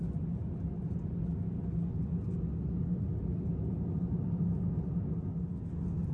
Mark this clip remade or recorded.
recorded